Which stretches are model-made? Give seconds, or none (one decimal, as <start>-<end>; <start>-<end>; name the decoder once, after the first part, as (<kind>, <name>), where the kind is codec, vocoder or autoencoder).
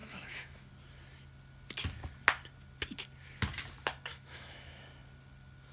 0.0-0.7 (autoencoder, DAC-VAE); 4.1-4.8